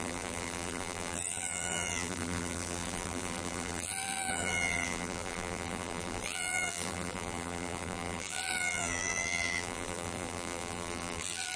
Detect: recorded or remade remade